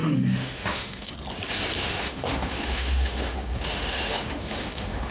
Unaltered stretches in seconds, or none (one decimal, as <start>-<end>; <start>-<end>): 1.1-1.8